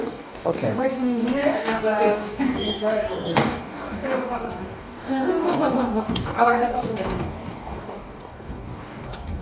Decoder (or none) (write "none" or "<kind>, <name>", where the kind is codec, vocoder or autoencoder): codec, DAC